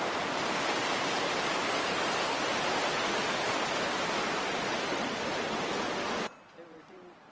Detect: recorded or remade recorded